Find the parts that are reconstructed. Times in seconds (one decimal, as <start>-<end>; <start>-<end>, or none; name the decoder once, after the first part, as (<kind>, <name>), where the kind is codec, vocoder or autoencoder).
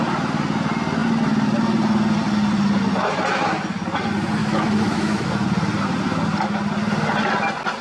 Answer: 4.4-5.3 (autoencoder, DAC-VAE)